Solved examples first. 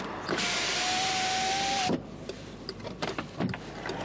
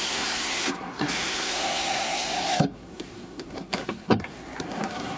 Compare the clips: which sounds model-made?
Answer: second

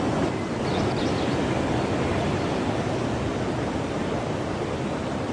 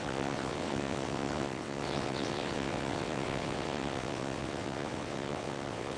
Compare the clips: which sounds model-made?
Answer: second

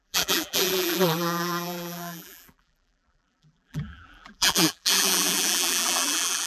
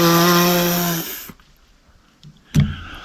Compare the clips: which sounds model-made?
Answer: first